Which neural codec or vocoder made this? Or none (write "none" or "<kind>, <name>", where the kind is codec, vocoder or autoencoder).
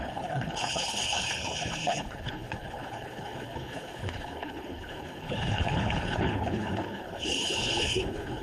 codec, HILCodec